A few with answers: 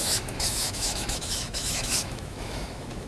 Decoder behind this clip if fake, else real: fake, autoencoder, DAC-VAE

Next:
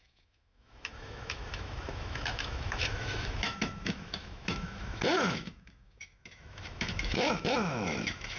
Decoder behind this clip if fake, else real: fake, autoencoder, DAC-VAE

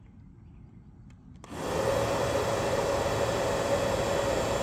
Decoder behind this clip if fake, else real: real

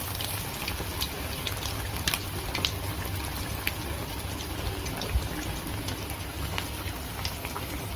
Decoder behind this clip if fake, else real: real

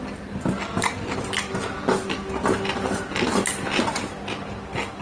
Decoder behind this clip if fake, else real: real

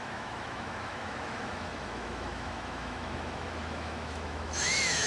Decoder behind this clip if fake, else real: fake, autoencoder, DAC-VAE